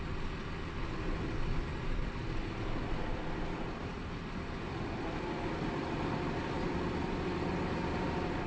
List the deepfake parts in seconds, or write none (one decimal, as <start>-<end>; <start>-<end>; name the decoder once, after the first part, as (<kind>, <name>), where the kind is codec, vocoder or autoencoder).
none